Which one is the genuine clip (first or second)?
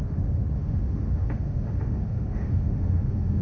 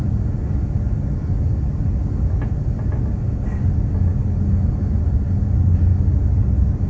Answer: second